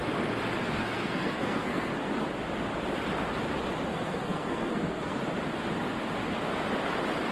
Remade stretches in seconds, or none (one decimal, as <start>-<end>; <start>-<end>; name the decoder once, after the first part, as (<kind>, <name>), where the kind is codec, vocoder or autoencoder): 0.8-2.1 (codec, SNAC); 3.9-5.2